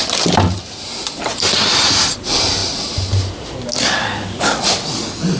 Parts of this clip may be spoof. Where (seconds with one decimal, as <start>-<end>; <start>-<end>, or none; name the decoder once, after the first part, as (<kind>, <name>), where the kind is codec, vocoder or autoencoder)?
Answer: 4.0-4.6 (codec, DAC)